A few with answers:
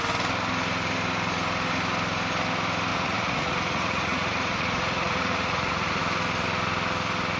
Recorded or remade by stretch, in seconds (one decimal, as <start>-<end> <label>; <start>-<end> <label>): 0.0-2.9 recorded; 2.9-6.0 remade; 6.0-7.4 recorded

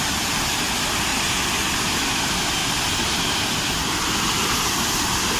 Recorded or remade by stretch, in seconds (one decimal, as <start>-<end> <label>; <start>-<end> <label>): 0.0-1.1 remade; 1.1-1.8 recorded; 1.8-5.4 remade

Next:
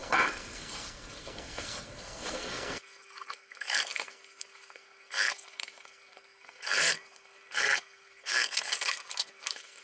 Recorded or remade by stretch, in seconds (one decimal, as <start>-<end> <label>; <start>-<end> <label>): 0.0-9.8 remade